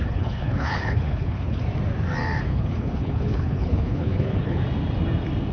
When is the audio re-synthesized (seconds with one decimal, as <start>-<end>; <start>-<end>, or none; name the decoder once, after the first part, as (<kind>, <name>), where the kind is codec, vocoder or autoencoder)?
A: 0.0-1.6 (codec, HILCodec); 2.5-4.6